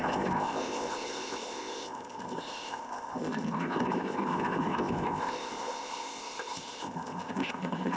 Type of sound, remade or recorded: remade